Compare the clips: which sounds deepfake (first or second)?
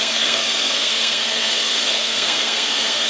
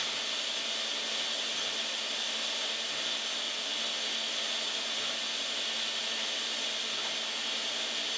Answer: first